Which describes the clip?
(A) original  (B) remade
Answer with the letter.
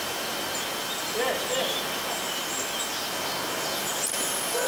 A